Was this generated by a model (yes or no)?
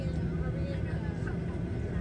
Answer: no